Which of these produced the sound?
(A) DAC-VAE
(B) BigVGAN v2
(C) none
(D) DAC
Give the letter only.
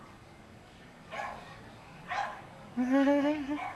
D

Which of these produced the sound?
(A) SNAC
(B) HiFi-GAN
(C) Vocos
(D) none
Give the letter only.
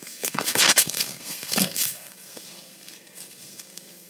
A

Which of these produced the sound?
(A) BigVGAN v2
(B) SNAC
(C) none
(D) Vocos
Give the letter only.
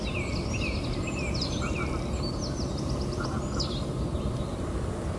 C